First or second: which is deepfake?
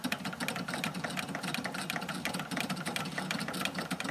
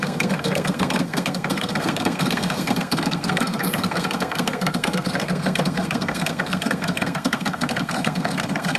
second